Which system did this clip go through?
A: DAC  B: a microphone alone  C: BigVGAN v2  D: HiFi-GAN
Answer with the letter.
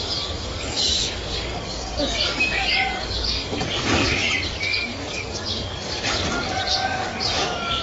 A